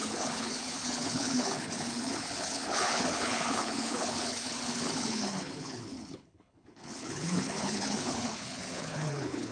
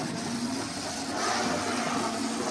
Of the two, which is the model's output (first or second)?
first